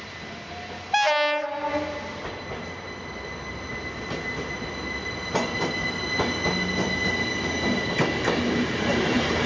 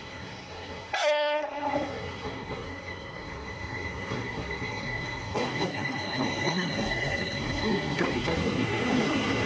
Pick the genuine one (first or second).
first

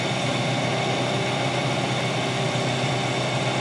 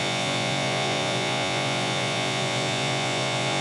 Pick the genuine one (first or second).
first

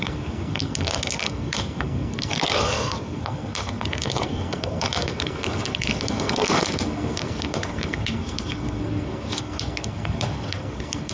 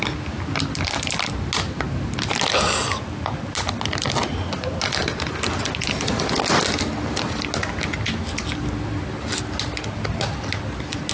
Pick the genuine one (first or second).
second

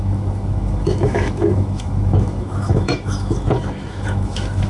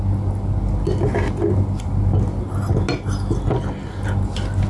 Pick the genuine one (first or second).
second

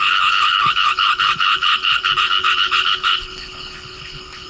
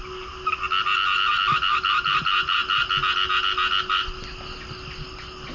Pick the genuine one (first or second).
second